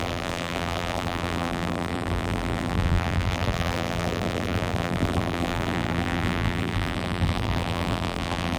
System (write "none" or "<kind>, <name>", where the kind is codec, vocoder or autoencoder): vocoder, BigVGAN v2